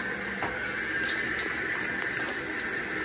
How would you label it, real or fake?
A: real